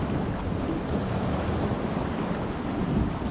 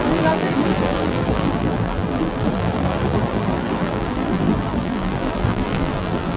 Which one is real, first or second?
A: first